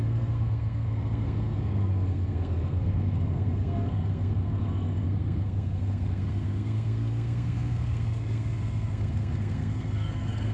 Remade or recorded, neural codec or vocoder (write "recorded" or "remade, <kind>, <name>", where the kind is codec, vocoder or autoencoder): remade, codec, SNAC